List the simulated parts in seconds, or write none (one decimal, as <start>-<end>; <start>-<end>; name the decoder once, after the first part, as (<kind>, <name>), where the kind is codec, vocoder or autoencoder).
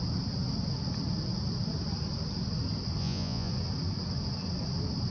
3.0-3.5 (vocoder, Vocos)